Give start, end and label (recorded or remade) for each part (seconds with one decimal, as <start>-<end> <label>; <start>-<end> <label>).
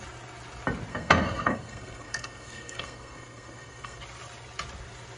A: 0.0-0.9 recorded; 0.9-4.0 remade; 4.0-5.2 recorded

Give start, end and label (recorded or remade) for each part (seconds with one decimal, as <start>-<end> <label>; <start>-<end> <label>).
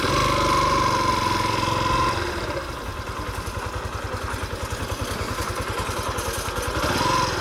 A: 0.0-7.4 recorded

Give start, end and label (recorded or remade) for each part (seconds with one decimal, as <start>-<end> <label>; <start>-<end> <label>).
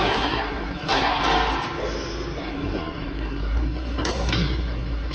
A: 0.0-1.2 remade; 1.2-2.4 recorded; 2.4-5.1 remade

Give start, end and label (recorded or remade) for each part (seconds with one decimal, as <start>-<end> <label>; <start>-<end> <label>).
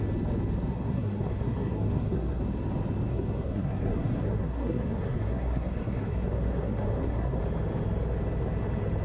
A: 0.0-0.7 recorded; 0.7-2.4 remade; 2.4-3.1 recorded; 3.1-7.4 remade; 7.4-9.0 recorded